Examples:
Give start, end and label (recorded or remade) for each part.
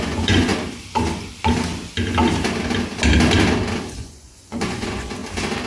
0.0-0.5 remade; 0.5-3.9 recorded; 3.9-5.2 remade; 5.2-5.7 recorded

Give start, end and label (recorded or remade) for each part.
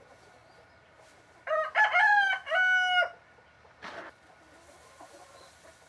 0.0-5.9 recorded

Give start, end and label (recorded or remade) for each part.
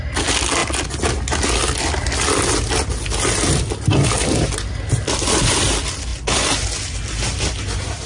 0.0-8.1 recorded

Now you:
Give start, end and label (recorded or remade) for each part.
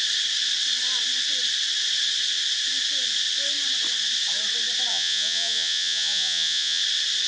0.0-4.9 recorded; 4.9-6.8 remade; 6.8-7.3 recorded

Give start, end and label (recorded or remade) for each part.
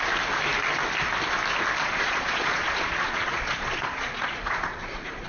0.0-1.8 recorded; 1.8-5.3 remade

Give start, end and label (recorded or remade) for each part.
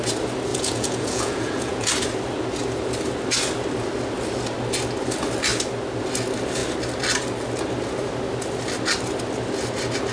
0.0-0.5 recorded; 0.5-1.9 remade; 1.9-10.1 recorded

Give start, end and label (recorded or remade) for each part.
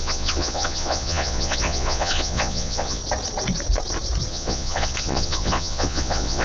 0.0-3.0 remade; 3.0-4.3 recorded; 4.3-6.4 remade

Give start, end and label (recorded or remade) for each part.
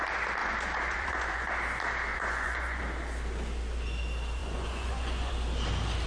0.0-0.4 recorded; 0.4-1.5 remade; 1.5-2.1 recorded; 2.1-2.8 remade; 2.8-4.4 recorded; 4.4-5.3 remade; 5.3-6.1 recorded